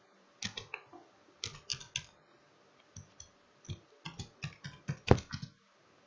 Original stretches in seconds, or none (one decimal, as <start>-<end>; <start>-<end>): 0.0-6.1